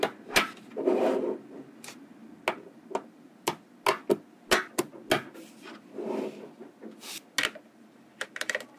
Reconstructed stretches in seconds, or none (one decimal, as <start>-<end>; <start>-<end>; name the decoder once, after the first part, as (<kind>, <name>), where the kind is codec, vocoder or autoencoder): none